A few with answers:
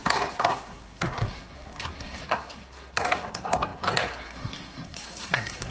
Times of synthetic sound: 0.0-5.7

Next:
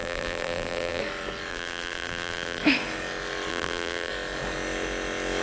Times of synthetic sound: 0.0-1.0; 1.5-2.6; 3.5-4.1

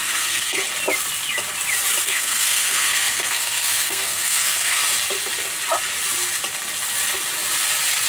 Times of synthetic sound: 0.0-0.6; 2.0-4.8

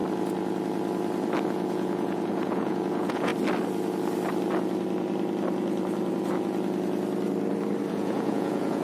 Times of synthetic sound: 1.4-3.3; 7.9-8.8